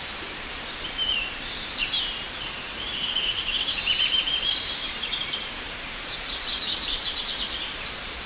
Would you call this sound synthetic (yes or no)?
yes